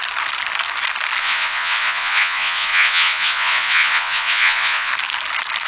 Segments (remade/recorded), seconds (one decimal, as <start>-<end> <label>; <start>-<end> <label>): 0.0-1.2 recorded; 1.2-4.9 remade; 4.9-5.7 recorded